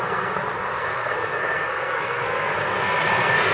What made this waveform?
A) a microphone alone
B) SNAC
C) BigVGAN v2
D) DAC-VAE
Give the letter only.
B